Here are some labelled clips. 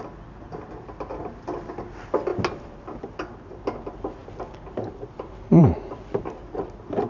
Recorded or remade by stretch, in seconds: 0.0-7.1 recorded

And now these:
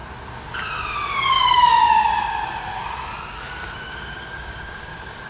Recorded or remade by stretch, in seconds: 0.0-1.3 recorded; 1.3-2.4 remade; 2.4-3.3 recorded; 3.3-5.3 remade

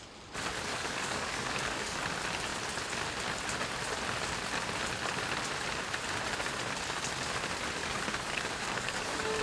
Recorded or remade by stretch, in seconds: 0.0-0.7 recorded; 0.7-2.0 remade; 2.0-7.8 recorded; 7.8-9.4 remade